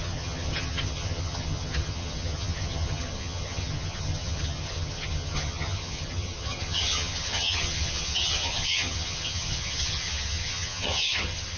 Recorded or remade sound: remade